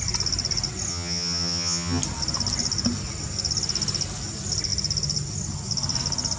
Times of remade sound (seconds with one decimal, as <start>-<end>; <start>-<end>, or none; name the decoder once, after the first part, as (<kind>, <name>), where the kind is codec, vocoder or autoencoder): 0.9-2.0 (vocoder, HiFi-GAN)